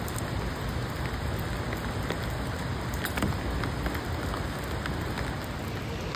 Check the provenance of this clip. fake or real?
real